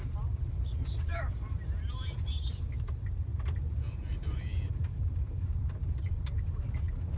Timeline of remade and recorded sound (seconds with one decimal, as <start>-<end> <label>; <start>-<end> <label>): 0.0-1.1 recorded; 1.1-2.6 remade; 2.6-3.3 recorded; 3.3-6.1 remade; 6.1-7.2 recorded

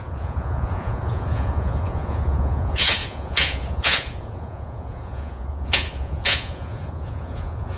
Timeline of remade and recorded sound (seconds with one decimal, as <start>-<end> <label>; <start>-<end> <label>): 0.0-7.8 remade

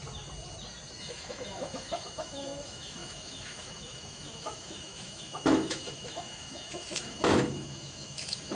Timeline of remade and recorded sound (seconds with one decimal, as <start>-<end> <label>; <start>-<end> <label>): 0.0-1.0 recorded; 1.0-8.5 remade

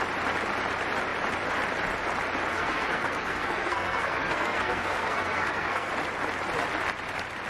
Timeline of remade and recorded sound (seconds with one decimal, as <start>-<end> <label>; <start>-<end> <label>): 0.0-2.5 recorded; 2.5-5.9 remade; 5.9-7.5 recorded